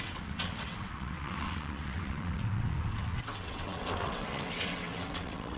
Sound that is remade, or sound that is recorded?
remade